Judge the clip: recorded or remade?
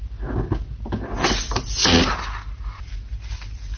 recorded